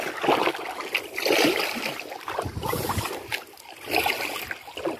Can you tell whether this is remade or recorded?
recorded